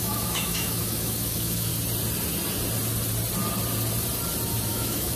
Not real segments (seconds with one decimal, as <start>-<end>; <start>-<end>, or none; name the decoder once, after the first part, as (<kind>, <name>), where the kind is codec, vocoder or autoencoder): 0.0-1.7 (autoencoder, DAC-VAE); 4.7-5.2